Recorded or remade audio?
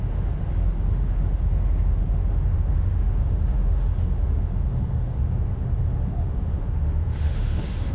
remade